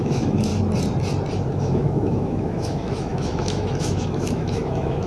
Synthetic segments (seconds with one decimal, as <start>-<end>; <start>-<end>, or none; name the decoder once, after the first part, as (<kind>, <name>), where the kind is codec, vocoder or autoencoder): 0.0-0.5 (autoencoder, DAC-VAE); 1.5-5.1